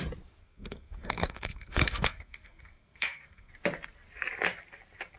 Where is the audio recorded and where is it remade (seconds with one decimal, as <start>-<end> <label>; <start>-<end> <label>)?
0.0-0.4 recorded; 0.4-3.5 remade; 3.5-5.2 recorded

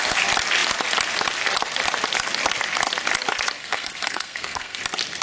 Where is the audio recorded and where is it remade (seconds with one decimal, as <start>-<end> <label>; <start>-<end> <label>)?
0.0-3.6 recorded; 3.6-4.8 remade; 4.8-5.2 recorded

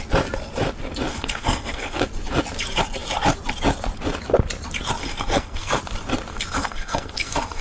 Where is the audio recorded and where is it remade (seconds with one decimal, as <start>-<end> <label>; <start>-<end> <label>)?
0.0-1.1 recorded; 1.1-2.0 remade; 2.0-5.0 recorded; 5.0-5.8 remade; 5.8-6.3 recorded; 6.3-7.6 remade

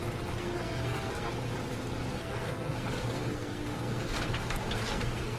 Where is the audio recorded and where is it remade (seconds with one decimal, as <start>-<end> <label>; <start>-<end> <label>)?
0.0-0.4 recorded; 0.4-1.3 remade; 1.3-2.1 recorded; 2.1-5.4 remade

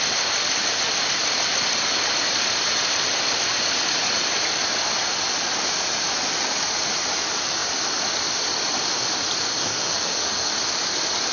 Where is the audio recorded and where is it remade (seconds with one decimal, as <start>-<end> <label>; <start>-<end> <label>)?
0.0-9.6 recorded; 9.6-10.5 remade; 10.5-11.3 recorded

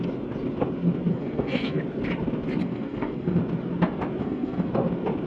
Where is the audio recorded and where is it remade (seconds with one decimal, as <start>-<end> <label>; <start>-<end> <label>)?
0.0-1.1 recorded; 1.1-1.8 remade; 1.8-2.6 recorded; 2.6-3.4 remade; 3.4-4.2 recorded; 4.2-4.7 remade; 4.7-5.3 recorded